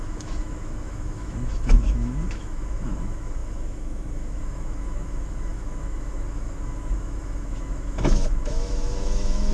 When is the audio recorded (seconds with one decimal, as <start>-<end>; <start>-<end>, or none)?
none